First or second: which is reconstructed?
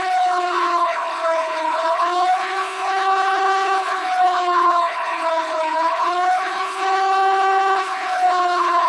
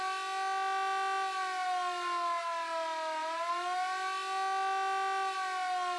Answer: first